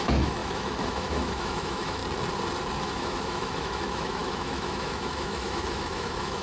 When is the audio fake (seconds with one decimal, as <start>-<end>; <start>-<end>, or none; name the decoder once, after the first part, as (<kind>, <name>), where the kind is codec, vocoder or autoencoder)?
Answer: 0.0-2.0 (autoencoder, DAC-VAE); 2.8-6.4